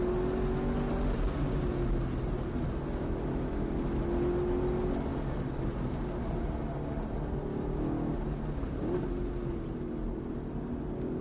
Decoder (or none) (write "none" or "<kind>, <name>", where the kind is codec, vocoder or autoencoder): none